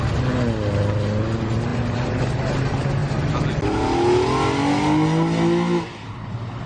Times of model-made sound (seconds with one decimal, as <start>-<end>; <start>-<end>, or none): none